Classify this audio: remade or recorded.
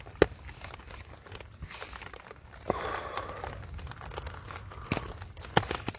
recorded